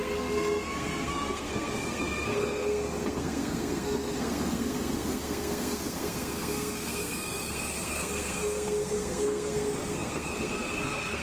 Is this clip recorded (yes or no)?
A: no